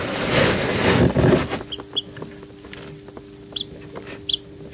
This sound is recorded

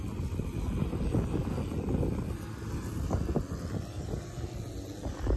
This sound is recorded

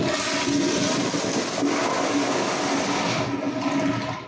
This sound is recorded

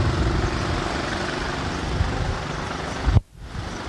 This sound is recorded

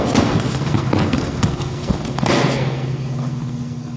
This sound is remade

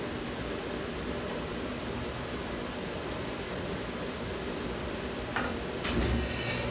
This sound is recorded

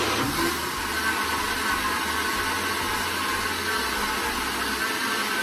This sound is recorded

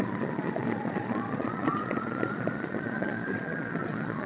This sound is remade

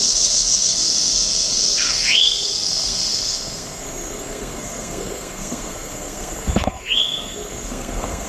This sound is remade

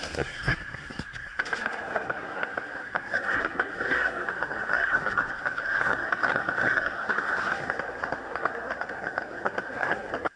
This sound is remade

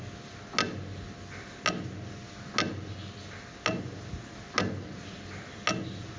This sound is recorded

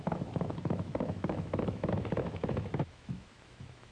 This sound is remade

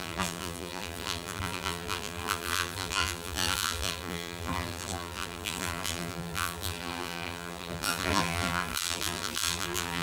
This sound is remade